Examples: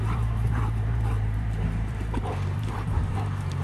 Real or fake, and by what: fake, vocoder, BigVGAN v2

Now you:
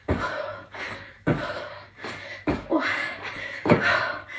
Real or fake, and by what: fake, codec, DAC